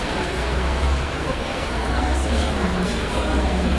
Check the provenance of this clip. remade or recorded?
remade